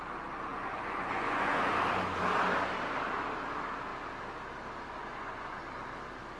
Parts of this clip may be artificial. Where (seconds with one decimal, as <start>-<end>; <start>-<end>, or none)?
0.5-1.6; 5.0-5.6

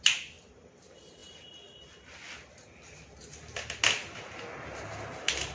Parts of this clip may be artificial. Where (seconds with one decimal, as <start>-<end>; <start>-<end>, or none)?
none